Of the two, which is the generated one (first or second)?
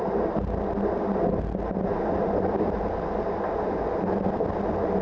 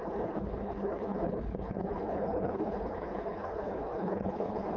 second